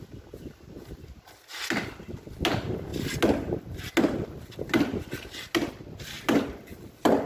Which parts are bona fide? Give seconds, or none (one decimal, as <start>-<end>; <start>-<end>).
0.0-7.3